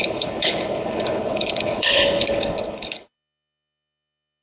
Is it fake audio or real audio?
fake